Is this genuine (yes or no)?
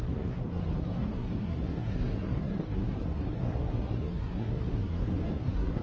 no